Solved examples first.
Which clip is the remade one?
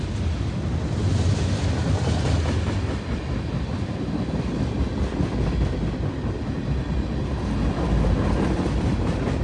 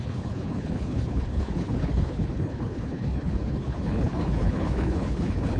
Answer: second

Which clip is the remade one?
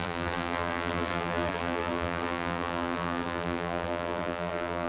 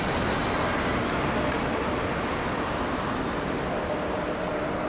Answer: first